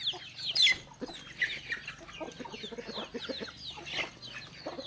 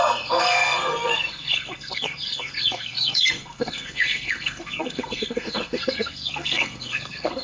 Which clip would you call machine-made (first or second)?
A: second